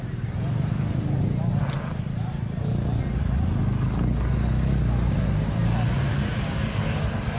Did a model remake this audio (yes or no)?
no